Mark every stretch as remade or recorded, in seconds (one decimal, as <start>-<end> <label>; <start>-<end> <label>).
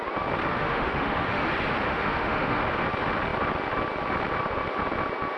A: 0.0-0.5 recorded; 0.5-1.5 remade; 1.5-1.9 recorded; 1.9-2.6 remade; 2.6-5.4 recorded